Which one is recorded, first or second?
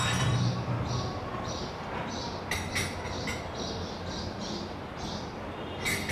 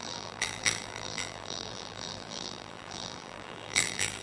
first